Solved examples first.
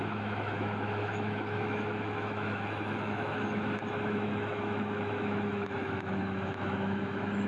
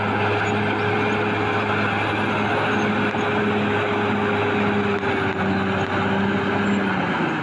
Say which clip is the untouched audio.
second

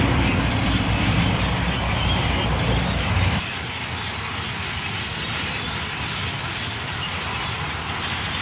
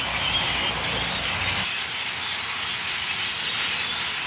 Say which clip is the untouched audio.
second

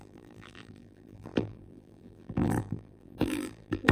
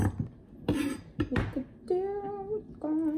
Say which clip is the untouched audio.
second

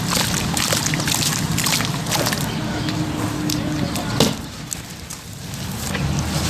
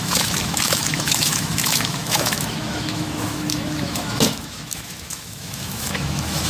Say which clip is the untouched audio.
first